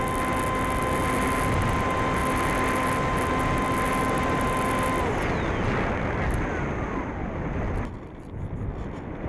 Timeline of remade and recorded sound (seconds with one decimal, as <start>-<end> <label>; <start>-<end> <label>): 0.0-9.3 recorded